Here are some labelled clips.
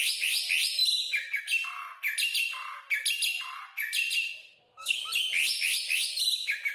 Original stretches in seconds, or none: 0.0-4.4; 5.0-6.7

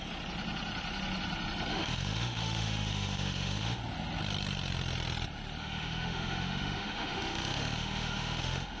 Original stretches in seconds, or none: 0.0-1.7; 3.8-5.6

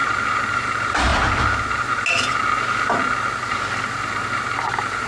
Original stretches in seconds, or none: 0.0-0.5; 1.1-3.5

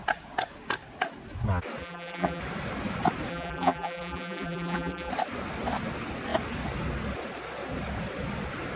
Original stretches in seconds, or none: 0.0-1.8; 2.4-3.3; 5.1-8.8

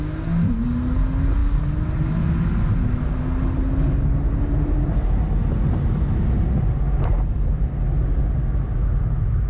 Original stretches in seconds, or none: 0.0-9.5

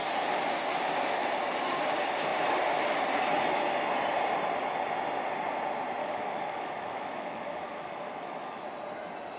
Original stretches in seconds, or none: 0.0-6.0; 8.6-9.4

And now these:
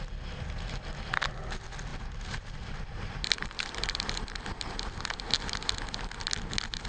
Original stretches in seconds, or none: 0.0-1.9; 4.6-6.9